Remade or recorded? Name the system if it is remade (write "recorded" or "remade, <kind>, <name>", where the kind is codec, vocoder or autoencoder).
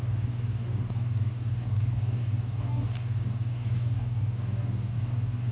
remade, codec, DAC